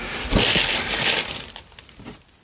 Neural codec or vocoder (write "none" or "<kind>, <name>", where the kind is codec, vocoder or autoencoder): none